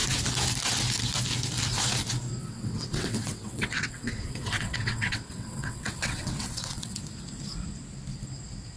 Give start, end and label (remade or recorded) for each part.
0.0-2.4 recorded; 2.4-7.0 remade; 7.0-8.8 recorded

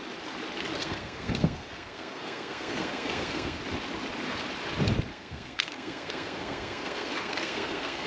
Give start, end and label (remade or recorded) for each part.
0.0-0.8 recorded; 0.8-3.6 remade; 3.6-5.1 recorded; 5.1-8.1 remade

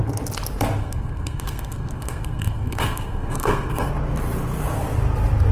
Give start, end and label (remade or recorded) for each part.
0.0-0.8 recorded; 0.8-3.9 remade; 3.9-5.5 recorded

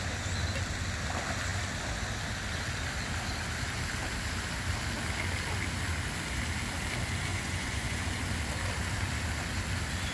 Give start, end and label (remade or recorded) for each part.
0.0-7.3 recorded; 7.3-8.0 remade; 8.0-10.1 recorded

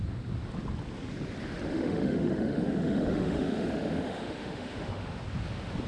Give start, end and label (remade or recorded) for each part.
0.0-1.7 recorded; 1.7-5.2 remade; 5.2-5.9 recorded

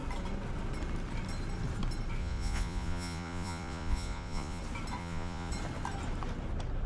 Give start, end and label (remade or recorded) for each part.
0.0-2.2 recorded; 2.2-4.6 remade; 4.6-5.0 recorded; 5.0-5.5 remade; 5.5-6.9 recorded

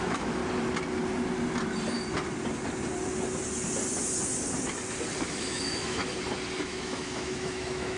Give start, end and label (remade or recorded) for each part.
0.0-0.4 remade; 0.4-5.2 recorded; 5.2-6.0 remade; 6.0-6.6 recorded; 6.6-8.0 remade